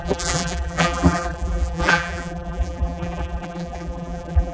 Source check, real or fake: fake